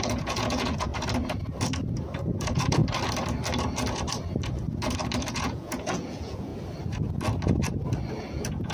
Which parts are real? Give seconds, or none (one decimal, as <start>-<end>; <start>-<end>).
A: 0.9-2.3; 2.8-5.3; 6.5-8.2